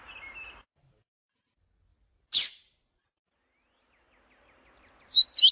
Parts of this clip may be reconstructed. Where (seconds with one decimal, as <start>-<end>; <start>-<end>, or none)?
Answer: none

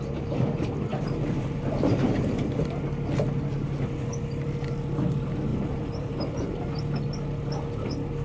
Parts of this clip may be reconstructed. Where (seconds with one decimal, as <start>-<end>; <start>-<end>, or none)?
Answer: 0.9-2.0; 5.5-6.8

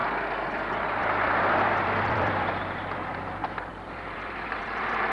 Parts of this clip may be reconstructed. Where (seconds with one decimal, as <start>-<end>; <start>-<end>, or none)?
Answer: 1.0-5.1

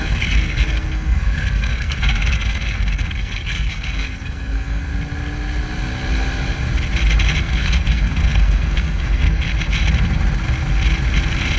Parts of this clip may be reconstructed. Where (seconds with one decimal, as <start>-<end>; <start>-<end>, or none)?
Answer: 0.0-4.9; 7.4-9.5

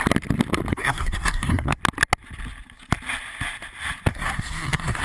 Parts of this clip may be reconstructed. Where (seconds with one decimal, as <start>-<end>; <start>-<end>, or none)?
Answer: 0.7-1.8; 4.1-5.0

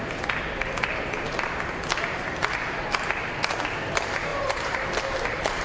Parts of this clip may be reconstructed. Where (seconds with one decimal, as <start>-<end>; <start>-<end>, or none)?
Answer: 4.3-4.9